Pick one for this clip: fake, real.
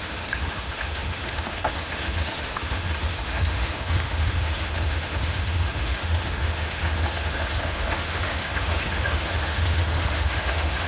fake